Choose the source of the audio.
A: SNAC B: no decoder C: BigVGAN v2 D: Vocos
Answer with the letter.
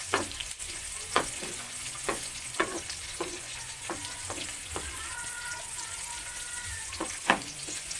D